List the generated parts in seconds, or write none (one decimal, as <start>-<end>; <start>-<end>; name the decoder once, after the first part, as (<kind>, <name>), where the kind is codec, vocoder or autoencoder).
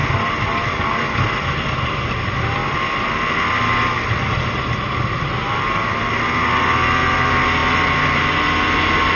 none